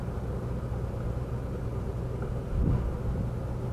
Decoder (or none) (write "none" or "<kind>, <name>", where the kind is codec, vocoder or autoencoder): none